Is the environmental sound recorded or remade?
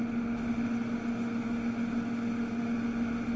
recorded